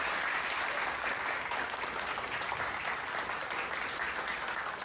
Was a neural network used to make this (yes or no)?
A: no